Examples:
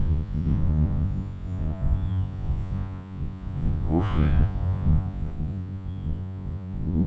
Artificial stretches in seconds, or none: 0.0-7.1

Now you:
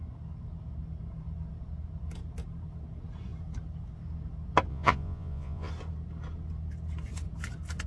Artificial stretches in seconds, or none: 4.7-5.7

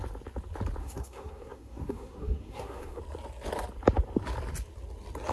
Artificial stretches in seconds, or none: 0.8-3.0

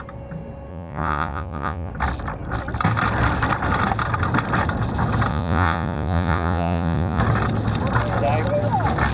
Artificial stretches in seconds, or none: 0.7-1.9; 5.3-7.2

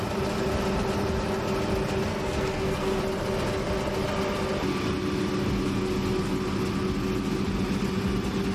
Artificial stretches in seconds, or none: 2.1-3.0

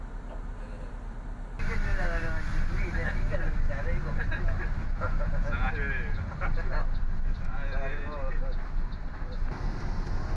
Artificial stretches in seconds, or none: 4.8-5.7

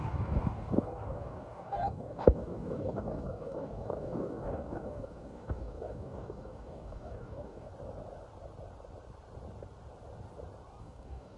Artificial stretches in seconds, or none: 0.0-7.7; 10.8-11.4

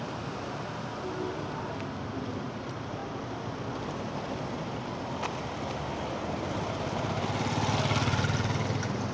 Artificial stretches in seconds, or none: none